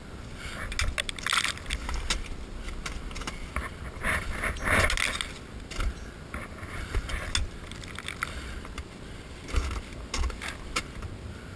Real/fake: real